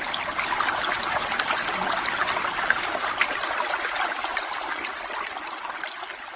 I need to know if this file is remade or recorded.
recorded